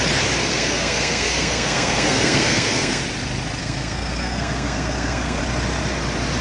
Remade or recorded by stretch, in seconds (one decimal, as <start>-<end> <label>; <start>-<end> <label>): 0.0-0.5 recorded; 0.5-3.0 remade; 3.0-3.6 recorded; 3.6-5.4 remade; 5.4-6.4 recorded